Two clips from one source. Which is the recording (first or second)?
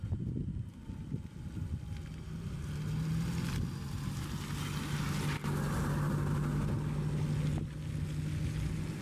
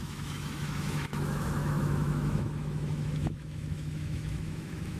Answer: first